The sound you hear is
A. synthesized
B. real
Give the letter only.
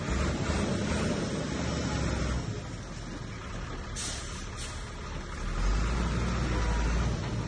B